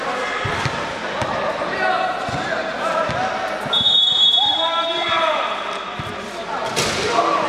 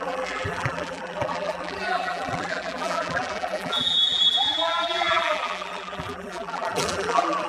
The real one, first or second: first